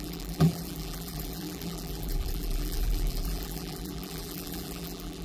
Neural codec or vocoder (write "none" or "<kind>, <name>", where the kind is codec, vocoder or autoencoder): vocoder, BigVGAN v2